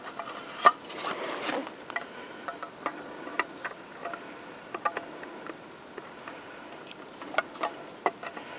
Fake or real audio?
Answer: real